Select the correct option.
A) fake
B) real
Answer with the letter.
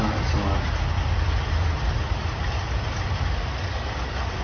B